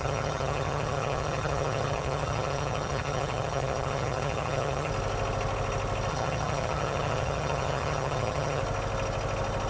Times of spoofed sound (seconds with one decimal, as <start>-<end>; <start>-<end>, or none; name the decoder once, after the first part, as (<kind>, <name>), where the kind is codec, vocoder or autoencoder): 0.0-4.9 (vocoder, HiFi-GAN); 6.1-8.6